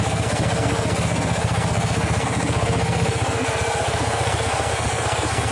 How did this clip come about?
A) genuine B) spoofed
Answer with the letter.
B